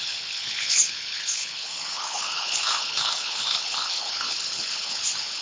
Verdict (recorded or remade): remade